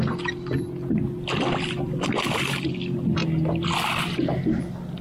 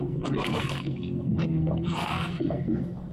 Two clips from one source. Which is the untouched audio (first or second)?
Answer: first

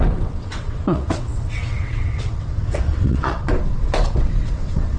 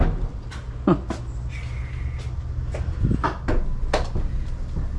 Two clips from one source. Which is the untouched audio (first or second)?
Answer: second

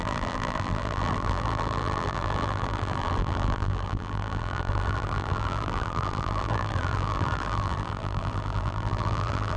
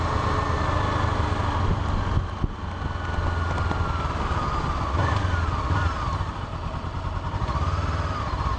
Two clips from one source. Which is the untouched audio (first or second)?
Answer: second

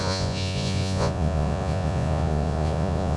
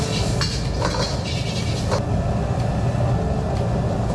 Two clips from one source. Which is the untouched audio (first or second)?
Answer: second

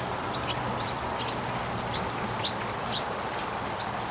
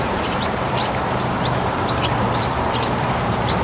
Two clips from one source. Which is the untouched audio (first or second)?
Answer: first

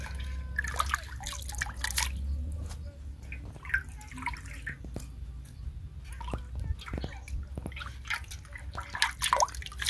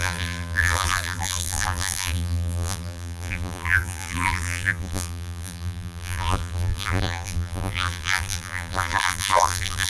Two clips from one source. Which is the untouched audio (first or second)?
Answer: first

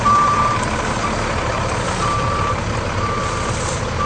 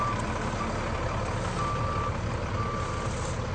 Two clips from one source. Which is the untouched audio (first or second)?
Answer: second